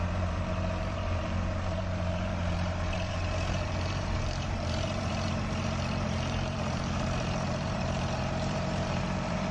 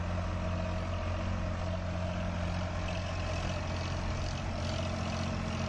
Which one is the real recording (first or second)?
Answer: second